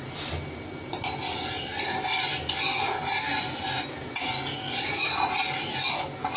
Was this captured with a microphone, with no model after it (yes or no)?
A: yes